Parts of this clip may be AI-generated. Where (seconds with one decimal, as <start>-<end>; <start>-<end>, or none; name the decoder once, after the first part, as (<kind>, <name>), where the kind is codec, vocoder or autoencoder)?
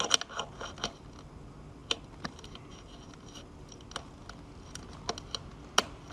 none